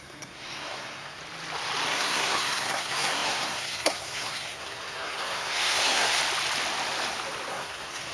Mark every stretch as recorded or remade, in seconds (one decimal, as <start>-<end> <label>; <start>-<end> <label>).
0.0-1.2 remade; 1.2-1.9 recorded; 1.9-6.2 remade; 6.2-7.5 recorded; 7.5-8.1 remade